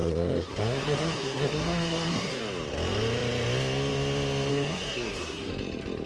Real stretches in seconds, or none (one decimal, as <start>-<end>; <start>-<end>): 2.4-4.5; 5.5-6.1